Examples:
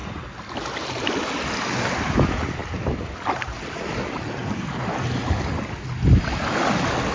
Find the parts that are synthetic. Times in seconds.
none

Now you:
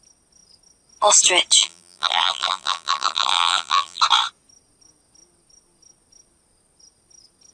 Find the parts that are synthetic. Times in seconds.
1.6-4.0 (vocoder, BigVGAN v2)

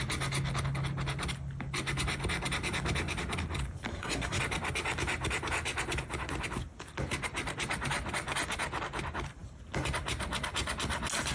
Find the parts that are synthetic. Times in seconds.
3.9-4.4 (codec, SNAC)